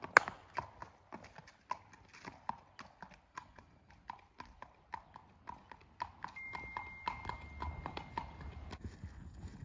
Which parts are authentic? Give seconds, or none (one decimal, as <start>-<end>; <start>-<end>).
0.0-3.3; 3.9-9.6